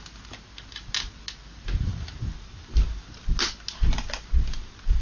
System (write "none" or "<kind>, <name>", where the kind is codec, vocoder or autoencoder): none